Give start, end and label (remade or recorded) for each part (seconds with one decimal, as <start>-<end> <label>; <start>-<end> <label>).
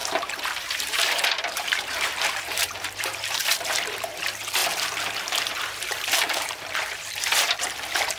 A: 0.0-3.4 remade; 3.4-3.9 recorded; 3.9-8.2 remade